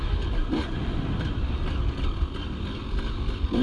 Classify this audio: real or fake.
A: real